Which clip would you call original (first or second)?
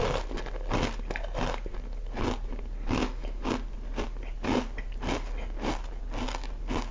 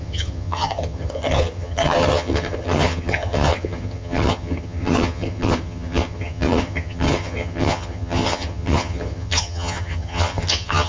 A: first